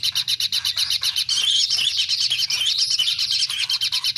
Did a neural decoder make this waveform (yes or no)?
no